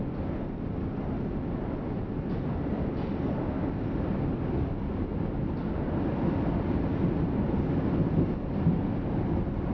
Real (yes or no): yes